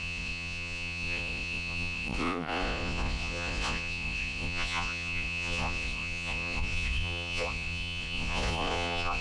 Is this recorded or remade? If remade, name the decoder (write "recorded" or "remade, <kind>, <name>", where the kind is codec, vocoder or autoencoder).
remade, vocoder, Vocos